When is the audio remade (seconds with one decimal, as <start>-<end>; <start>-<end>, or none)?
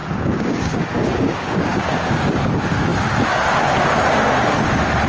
0.0-2.5